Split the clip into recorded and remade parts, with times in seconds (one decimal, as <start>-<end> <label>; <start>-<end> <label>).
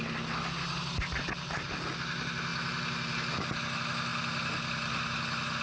0.0-5.6 recorded